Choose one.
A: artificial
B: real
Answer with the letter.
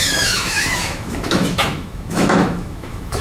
A